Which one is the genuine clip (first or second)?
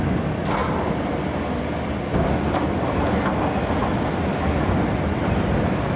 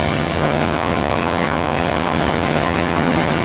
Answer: first